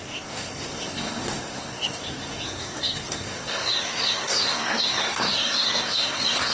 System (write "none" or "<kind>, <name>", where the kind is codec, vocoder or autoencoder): codec, SNAC